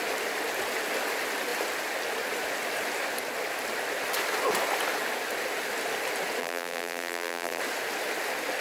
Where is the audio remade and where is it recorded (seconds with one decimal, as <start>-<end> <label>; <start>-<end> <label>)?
0.0-6.4 recorded; 6.4-7.6 remade; 7.6-8.6 recorded